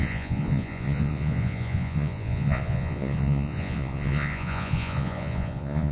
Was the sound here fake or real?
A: fake